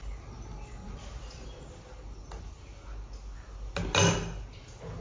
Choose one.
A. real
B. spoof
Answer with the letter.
A